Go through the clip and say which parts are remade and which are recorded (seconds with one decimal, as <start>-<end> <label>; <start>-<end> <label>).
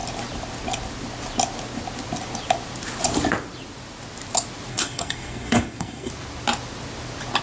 0.0-4.7 recorded; 4.7-6.1 remade; 6.1-7.4 recorded